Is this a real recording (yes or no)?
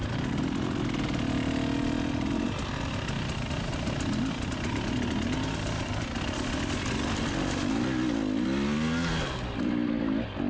yes